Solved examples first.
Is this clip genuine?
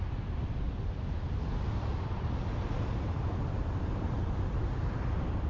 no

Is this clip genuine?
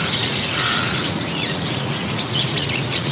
no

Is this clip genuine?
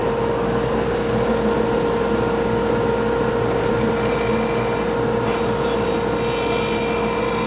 yes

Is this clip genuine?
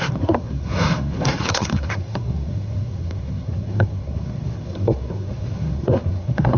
no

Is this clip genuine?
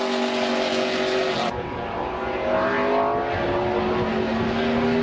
yes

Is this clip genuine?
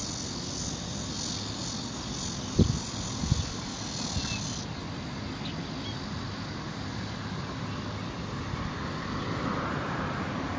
yes